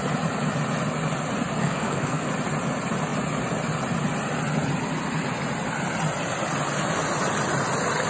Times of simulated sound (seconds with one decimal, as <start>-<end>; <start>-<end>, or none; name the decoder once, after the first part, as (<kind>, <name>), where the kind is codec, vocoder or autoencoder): 1.6-2.3 (codec, SNAC)